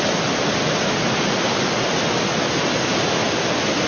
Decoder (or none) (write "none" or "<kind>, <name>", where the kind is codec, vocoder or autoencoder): none